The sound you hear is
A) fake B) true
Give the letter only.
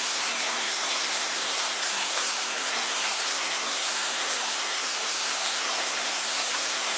A